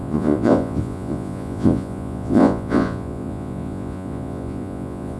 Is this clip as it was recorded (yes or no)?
no